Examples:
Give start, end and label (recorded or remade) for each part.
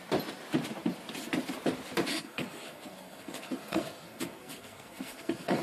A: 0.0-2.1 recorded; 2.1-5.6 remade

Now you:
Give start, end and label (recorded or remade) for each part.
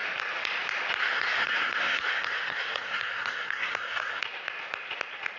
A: 0.0-1.0 recorded; 1.0-4.2 remade; 4.2-5.4 recorded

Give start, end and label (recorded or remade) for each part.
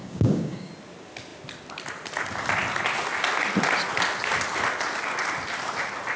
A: 0.0-0.7 remade; 0.7-6.2 recorded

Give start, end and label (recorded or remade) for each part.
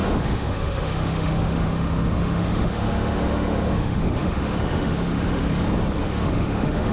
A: 0.0-5.4 remade; 5.4-6.0 recorded; 6.0-6.9 remade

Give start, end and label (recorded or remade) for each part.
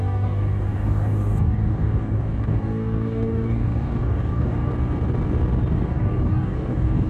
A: 0.0-4.7 remade; 4.7-5.7 recorded; 5.7-7.1 remade